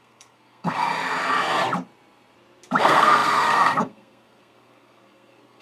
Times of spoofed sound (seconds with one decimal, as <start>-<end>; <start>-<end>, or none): 0.0-0.9; 2.8-5.6